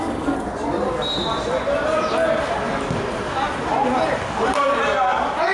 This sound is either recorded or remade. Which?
recorded